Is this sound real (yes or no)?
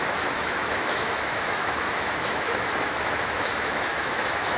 no